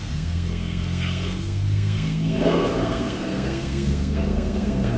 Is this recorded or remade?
remade